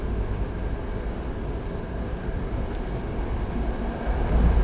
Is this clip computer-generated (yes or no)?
no